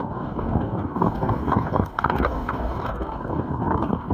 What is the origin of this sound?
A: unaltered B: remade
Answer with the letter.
B